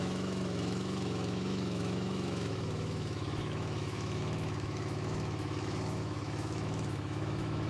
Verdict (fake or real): fake